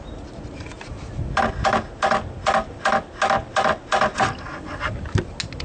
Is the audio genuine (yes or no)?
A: yes